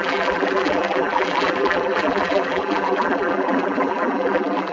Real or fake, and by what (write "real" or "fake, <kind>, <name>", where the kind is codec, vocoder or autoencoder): fake, vocoder, BigVGAN v2